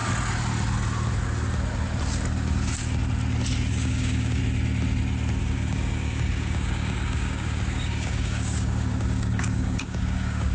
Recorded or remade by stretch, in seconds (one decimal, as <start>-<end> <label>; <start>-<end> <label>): 0.0-3.7 recorded; 3.7-4.4 remade; 4.4-5.4 recorded; 5.4-10.5 remade